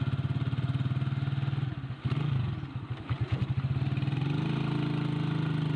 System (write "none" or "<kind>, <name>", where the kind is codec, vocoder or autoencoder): none